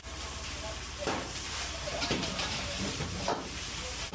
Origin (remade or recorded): remade